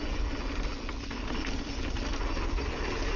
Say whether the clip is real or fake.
real